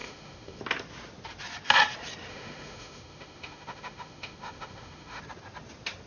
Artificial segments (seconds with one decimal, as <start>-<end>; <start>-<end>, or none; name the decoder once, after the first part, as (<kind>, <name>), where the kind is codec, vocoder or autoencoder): 0.0-0.6 (autoencoder, DAC-VAE); 2.3-5.2